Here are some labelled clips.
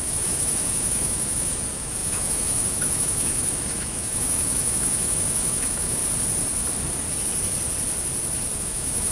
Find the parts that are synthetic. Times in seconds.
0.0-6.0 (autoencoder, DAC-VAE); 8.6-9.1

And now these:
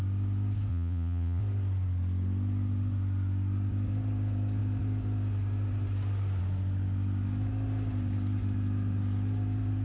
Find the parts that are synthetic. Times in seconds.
0.7-1.4 (vocoder, Vocos)